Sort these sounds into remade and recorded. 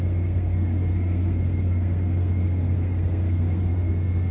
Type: remade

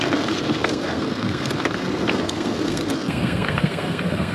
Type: remade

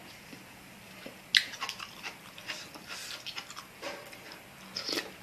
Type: recorded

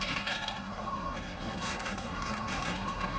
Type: remade